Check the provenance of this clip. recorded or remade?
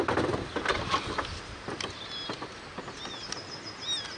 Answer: recorded